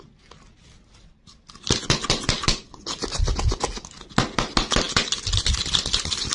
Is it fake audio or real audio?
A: real